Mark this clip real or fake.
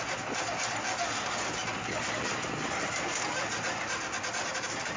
real